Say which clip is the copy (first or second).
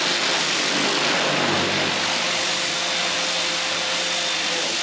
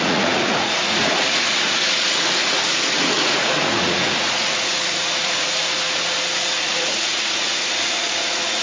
second